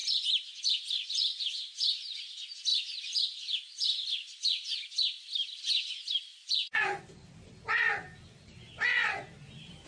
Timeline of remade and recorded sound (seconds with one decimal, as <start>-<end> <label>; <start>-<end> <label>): 0.0-0.6 recorded; 0.6-6.3 remade; 6.3-7.0 recorded; 7.0-9.9 remade